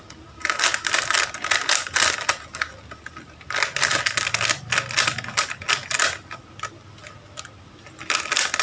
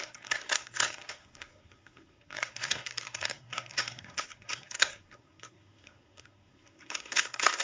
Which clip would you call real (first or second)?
first